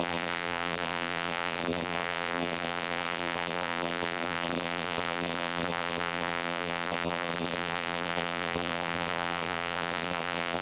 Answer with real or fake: fake